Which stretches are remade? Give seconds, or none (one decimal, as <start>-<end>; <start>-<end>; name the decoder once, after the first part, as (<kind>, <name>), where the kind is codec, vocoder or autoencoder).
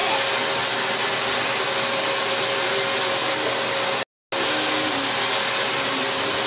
none